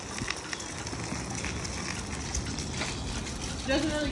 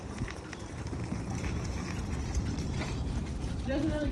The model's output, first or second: second